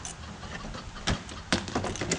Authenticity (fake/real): real